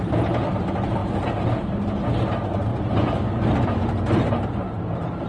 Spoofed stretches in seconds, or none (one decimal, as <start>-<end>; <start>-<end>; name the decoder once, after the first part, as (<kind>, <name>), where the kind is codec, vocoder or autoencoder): 1.0-1.7 (vocoder, BigVGAN v2); 2.7-4.5